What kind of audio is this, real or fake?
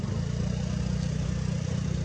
real